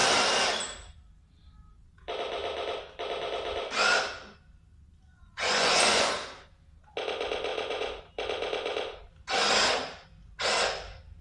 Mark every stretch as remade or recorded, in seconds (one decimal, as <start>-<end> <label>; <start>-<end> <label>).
0.0-5.1 recorded; 5.1-6.1 remade; 6.1-7.5 recorded; 7.5-8.0 remade; 8.0-11.2 recorded